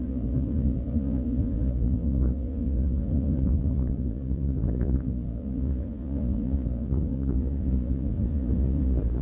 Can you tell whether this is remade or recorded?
remade